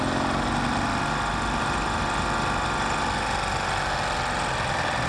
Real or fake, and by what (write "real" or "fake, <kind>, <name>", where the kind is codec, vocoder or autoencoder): real